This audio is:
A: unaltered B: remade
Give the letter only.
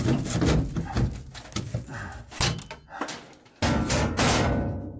A